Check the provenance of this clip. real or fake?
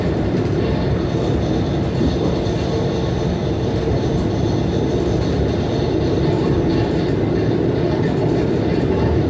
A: real